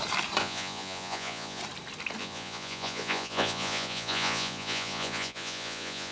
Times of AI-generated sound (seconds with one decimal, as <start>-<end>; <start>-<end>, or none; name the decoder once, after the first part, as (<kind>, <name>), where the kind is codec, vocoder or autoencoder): 0.4-1.6 (vocoder, Vocos); 2.2-6.1